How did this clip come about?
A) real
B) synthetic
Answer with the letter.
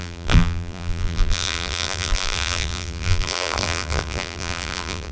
B